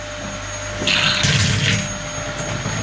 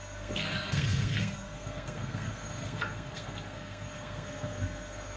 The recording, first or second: first